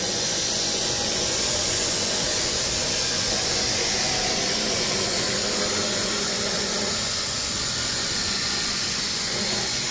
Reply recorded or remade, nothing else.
remade